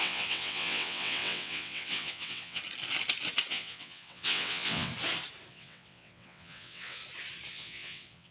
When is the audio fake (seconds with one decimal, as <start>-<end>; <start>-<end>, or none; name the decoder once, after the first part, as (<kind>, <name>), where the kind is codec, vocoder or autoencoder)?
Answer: 0.0-2.6 (vocoder, WaveNeXt); 3.5-4.9; 5.5-7.0; 7.5-8.3